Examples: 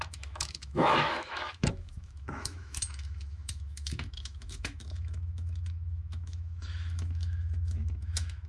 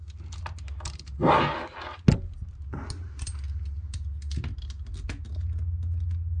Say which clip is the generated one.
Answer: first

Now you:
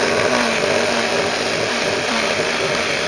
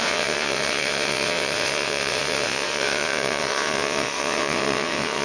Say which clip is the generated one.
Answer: second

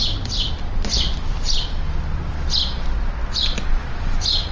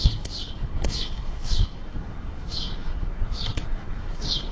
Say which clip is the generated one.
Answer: second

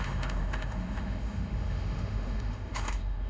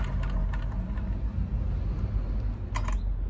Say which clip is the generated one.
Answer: first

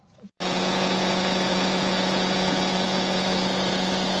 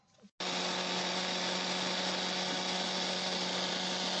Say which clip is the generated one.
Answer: first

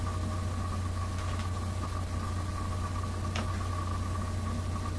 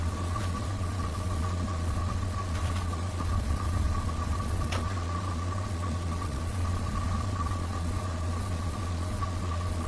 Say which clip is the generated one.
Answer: second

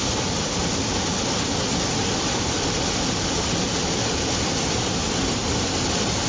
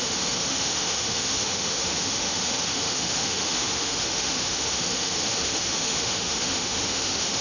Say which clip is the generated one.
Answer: second